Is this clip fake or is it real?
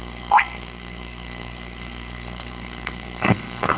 fake